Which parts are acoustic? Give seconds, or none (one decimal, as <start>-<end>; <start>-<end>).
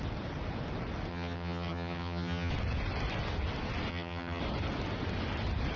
0.0-1.1; 2.5-3.9; 4.4-5.8